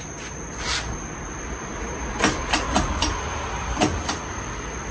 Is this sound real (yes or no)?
yes